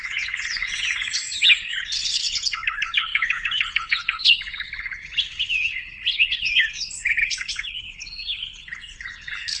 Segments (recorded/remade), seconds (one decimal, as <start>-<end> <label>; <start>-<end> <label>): 0.0-9.6 remade